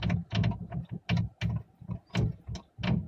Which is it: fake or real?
real